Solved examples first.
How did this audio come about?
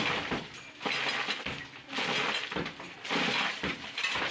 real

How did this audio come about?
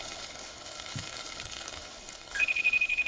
fake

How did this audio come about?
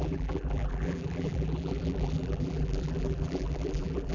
fake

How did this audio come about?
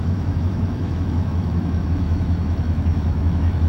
fake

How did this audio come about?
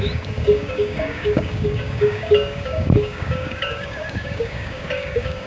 fake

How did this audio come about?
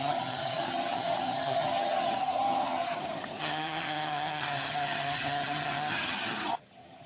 fake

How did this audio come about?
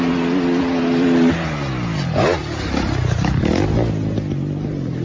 real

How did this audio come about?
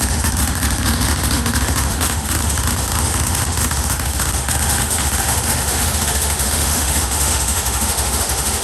fake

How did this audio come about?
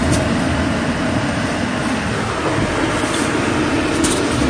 real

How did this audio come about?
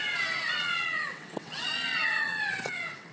fake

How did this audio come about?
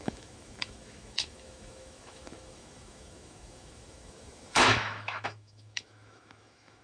fake